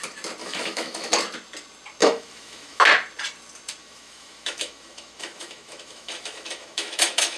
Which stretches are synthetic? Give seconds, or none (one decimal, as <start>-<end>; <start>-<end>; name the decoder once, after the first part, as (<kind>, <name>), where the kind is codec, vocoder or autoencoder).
0.4-1.1 (autoencoder, DAC-VAE); 2.0-2.8; 3.8-7.4